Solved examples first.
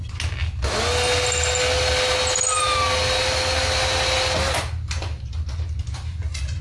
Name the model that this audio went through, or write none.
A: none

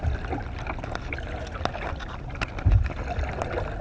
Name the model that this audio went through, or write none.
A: none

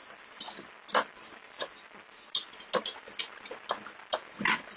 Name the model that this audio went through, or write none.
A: none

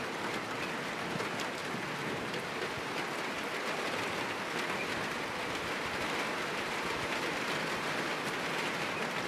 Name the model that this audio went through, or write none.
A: none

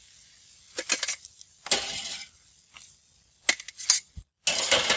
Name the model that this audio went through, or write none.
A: none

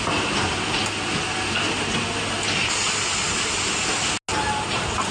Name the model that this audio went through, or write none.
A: none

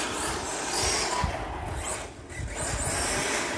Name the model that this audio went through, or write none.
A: none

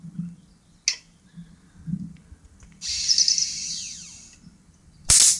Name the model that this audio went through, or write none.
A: none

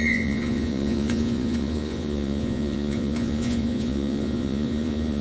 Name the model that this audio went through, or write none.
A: vocoder, Vocos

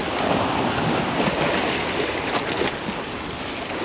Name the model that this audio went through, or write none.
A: none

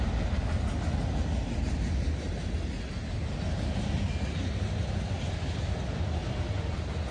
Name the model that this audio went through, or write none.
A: none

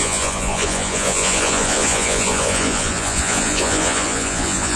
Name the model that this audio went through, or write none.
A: vocoder, Vocos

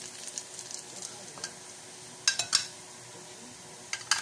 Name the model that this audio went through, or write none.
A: none